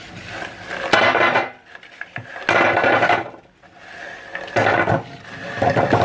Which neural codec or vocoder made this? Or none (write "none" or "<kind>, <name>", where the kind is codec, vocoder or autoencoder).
none